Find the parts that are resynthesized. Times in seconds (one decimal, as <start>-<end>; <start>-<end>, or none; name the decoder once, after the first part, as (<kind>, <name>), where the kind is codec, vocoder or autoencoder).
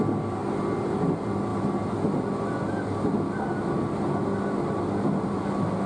none